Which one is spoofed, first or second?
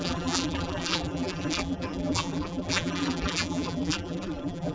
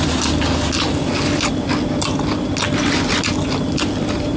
first